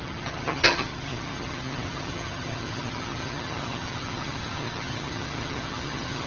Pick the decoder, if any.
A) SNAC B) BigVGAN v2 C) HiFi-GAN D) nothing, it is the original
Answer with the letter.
C